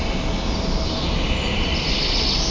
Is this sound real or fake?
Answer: real